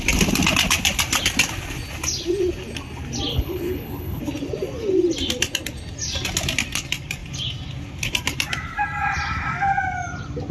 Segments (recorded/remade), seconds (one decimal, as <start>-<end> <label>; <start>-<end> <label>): 0.0-3.3 recorded; 3.3-4.2 remade; 4.2-10.5 recorded